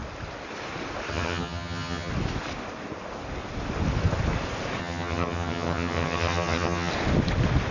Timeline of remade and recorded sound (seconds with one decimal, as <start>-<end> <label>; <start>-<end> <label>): 0.0-1.1 recorded; 1.1-2.1 remade; 2.1-4.8 recorded; 4.8-6.9 remade; 6.9-7.7 recorded